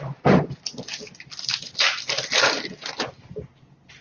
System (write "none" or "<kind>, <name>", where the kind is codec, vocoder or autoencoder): none